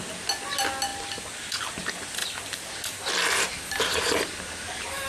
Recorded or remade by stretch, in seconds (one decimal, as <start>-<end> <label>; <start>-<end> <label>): 0.0-2.2 recorded; 2.2-2.7 remade; 2.7-5.1 recorded